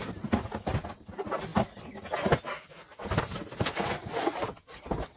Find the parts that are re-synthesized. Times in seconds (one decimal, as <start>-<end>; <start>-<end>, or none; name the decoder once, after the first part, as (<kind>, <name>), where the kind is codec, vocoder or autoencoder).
none